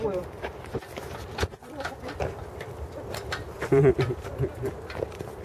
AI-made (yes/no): yes